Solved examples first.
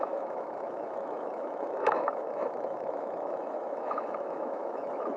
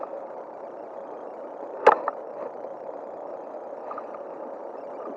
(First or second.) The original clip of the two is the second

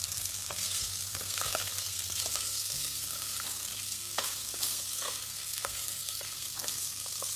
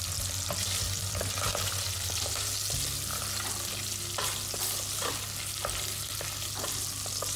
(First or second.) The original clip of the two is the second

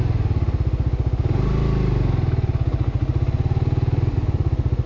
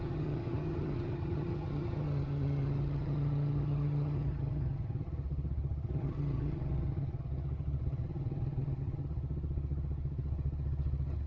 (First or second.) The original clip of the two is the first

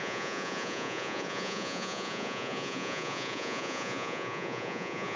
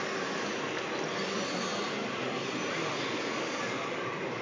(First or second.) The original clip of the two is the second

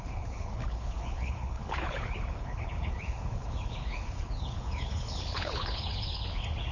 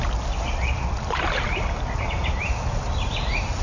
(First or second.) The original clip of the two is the second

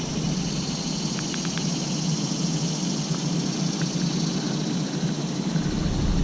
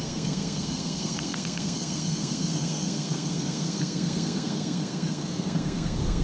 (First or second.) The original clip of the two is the first